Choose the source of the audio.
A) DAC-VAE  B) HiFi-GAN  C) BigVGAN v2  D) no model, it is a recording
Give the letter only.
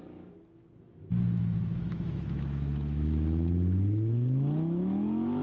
A